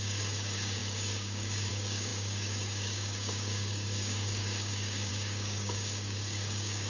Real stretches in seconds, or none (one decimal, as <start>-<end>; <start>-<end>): none